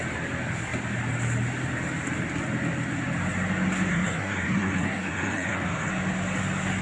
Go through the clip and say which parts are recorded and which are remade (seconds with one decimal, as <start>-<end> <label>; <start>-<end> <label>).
0.0-3.9 recorded; 3.9-5.9 remade; 5.9-6.8 recorded